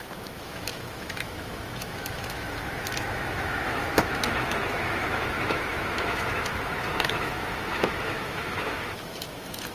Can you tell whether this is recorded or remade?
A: remade